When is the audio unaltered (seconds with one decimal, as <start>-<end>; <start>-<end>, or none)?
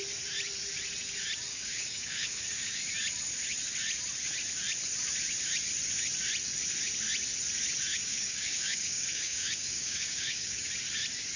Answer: 0.0-1.5; 2.8-7.9; 10.7-11.4